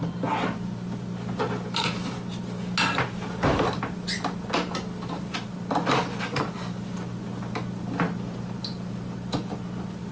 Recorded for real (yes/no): yes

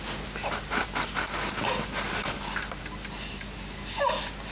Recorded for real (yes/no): yes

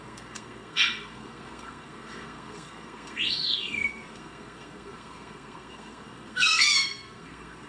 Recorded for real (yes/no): no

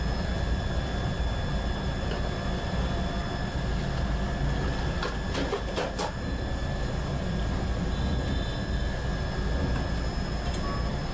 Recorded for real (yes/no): yes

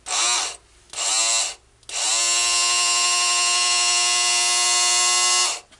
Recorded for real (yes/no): yes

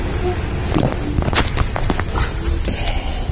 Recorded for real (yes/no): yes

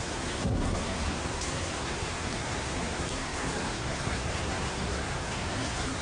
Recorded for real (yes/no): no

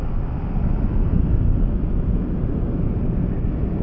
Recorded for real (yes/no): yes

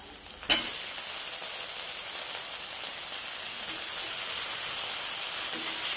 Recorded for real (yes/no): yes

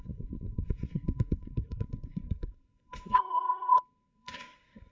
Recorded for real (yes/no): no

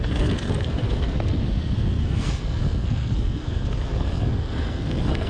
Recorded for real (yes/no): no